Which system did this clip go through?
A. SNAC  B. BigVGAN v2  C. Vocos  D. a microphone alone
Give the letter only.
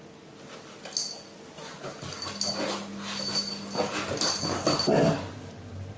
D